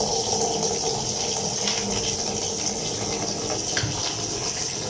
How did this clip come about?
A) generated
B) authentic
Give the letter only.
B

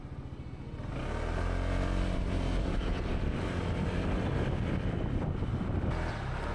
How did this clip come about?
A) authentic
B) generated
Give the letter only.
A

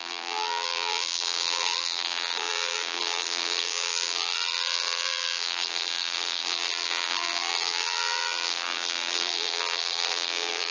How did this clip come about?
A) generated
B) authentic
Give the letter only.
A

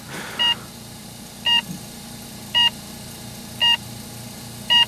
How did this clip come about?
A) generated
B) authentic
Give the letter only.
B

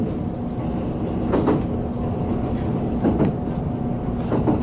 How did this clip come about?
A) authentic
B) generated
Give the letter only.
A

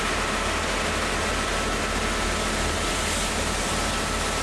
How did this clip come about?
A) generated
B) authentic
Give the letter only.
B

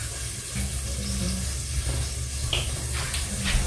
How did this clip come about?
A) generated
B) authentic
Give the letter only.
B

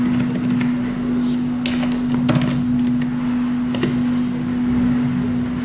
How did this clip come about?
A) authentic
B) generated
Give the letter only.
A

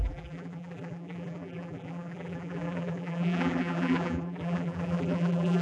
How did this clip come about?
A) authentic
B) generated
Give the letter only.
B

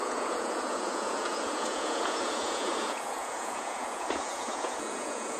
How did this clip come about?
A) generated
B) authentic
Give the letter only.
A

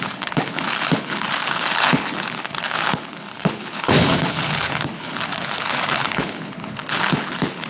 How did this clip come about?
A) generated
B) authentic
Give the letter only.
A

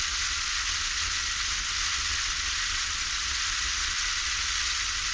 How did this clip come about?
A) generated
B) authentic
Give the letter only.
B